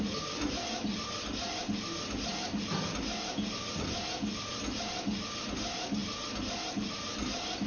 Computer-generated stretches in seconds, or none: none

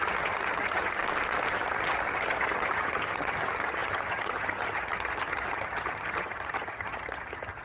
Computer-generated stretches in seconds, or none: 0.0-1.0 (vocoder, HiFi-GAN); 1.5-7.6

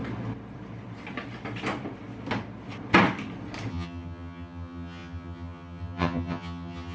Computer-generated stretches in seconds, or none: 3.7-6.9 (vocoder, HiFi-GAN)